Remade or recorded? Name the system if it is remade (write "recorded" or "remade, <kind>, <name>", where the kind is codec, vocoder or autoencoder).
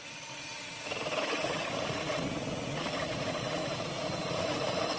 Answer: remade, vocoder, Vocos